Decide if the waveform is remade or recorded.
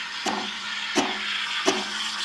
remade